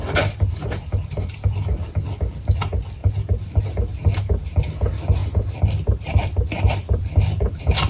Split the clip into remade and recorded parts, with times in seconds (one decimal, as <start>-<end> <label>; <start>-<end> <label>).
0.0-7.9 recorded